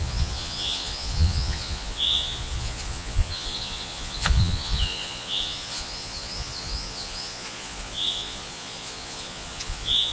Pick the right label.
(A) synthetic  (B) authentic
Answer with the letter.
A